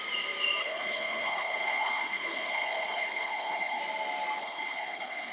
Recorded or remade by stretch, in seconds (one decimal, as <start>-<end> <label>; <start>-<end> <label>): 0.0-0.6 recorded; 0.6-3.8 remade; 3.8-4.4 recorded; 4.4-5.3 remade